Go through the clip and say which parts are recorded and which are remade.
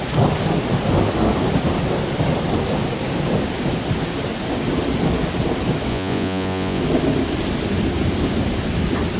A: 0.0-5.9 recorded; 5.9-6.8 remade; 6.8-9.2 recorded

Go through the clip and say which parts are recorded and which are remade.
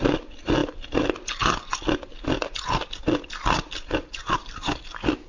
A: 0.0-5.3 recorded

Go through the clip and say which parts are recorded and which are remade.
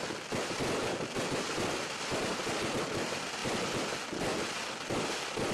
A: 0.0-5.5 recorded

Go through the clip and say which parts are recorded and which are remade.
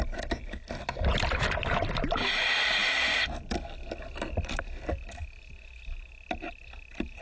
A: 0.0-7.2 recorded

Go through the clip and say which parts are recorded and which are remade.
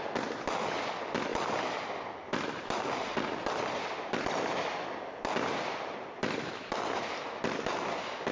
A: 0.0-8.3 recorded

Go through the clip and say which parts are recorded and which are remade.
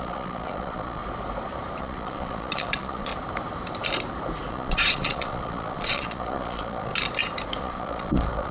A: 0.0-1.0 remade; 1.0-1.8 recorded; 1.8-3.1 remade; 3.1-4.5 recorded; 4.5-6.9 remade; 6.9-7.6 recorded; 7.6-8.5 remade